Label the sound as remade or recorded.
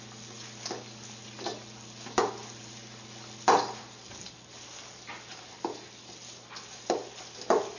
recorded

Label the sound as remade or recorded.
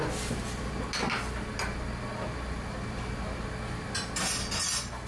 recorded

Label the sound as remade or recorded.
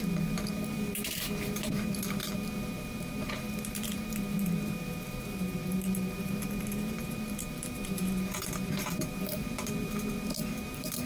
remade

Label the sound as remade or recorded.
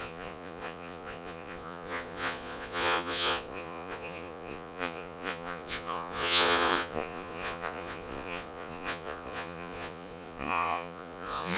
remade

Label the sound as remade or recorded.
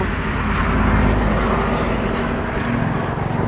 recorded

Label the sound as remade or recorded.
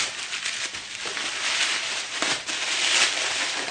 recorded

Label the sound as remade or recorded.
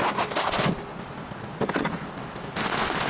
recorded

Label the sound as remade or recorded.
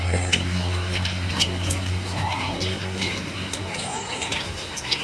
remade